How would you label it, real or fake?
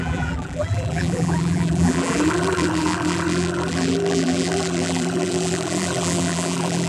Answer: fake